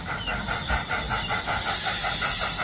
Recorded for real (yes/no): yes